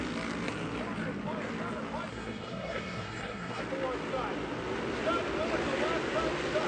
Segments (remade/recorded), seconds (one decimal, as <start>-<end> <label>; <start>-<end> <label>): 0.0-2.1 recorded; 2.1-3.6 remade; 3.6-6.7 recorded